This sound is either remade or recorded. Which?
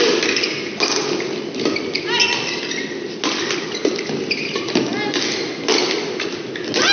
recorded